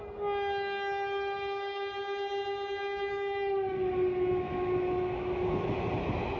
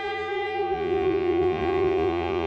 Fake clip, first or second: second